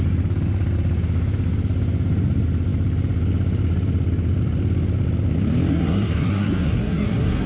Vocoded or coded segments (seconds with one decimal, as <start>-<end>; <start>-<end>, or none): 5.7-7.5

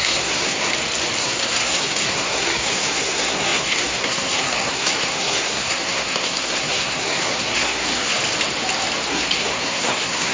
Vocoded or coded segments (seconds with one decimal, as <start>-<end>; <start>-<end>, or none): 0.0-0.7; 1.2-8.2; 9.1-10.3

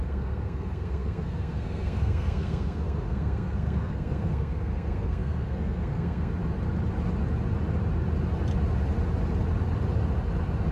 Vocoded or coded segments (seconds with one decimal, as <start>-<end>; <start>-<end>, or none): 0.0-6.3

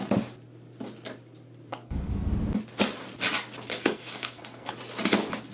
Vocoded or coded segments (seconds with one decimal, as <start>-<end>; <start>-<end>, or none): 1.7-2.3; 3.7-4.7

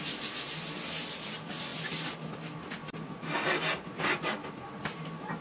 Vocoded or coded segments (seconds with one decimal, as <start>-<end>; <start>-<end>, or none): none

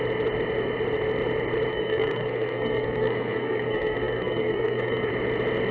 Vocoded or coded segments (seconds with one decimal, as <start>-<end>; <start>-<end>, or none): 1.7-5.1

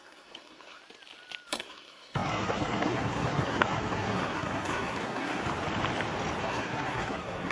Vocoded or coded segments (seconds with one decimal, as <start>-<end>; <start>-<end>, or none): 0.0-0.8; 1.5-5.4; 6.4-7.5